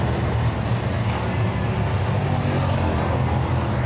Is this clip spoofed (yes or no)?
no